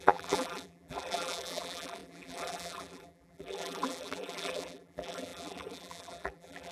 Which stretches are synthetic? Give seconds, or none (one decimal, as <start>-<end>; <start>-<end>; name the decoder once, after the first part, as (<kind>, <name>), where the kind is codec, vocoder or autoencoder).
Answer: 0.0-6.7 (vocoder, BigVGAN v2)